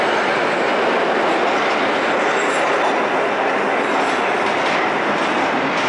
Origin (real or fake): real